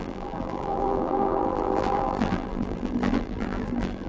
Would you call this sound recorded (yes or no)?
no